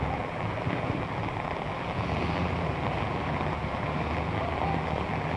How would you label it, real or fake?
fake